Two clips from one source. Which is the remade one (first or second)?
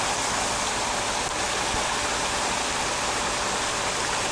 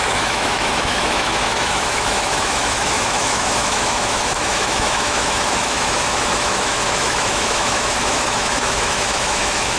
second